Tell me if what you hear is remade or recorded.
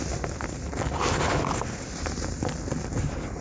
recorded